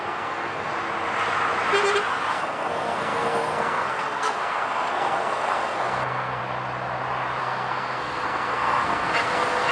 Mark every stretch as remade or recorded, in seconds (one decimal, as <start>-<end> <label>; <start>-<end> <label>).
0.0-0.7 remade; 0.7-2.3 recorded; 2.3-6.4 remade; 6.4-7.4 recorded; 7.4-9.7 remade